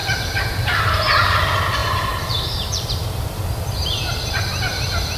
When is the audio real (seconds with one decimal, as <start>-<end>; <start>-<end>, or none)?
1.4-1.8; 2.9-5.2

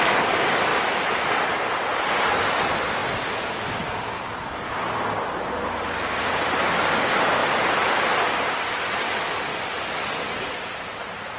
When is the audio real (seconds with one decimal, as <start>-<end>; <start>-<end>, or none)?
0.0-7.4; 10.6-11.4

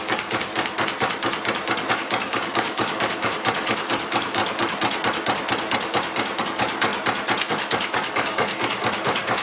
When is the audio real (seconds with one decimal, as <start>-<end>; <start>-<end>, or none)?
0.5-1.9; 4.4-6.4; 6.9-7.5

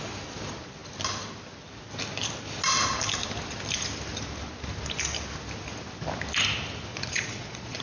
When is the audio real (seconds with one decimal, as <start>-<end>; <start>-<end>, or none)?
0.0-6.9